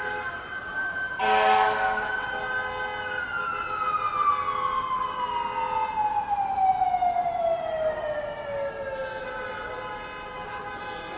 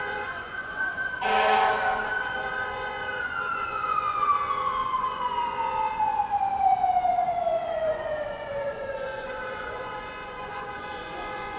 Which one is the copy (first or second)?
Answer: second